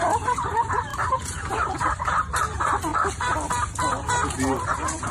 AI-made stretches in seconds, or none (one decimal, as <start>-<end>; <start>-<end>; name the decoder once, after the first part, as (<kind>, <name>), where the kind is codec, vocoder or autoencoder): 0.0-2.9 (vocoder, BigVGAN v2); 4.6-5.1